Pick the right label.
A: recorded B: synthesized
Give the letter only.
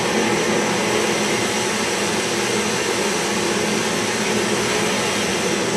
A